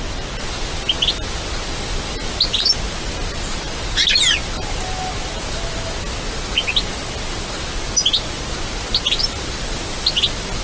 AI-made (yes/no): no